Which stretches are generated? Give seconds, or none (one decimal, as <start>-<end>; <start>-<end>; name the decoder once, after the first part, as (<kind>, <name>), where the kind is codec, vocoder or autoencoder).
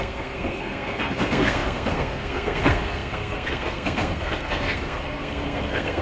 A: 0.0-6.0 (codec, SNAC)